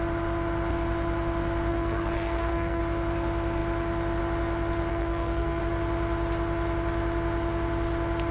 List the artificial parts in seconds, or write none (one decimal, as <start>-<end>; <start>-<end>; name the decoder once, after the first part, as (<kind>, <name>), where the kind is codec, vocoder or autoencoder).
1.7-2.8 (codec, SNAC); 4.9-5.6